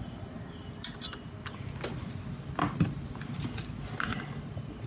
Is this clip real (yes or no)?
yes